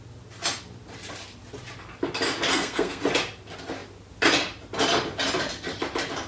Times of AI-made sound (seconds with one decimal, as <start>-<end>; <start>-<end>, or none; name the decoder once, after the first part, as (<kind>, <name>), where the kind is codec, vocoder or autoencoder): 2.5-3.0 (codec, SNAC)